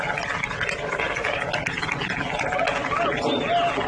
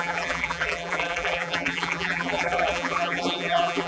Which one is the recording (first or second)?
first